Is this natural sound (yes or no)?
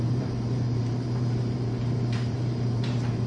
no